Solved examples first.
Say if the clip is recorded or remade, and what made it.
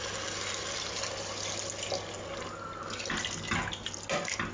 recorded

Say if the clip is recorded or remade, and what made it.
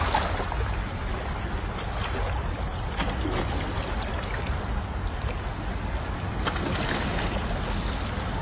recorded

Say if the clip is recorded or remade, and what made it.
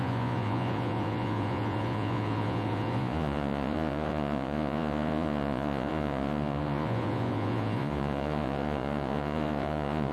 remade, vocoder, Vocos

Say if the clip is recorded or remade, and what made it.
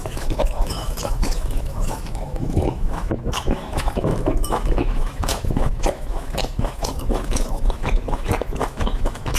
remade, autoencoder, DAC-VAE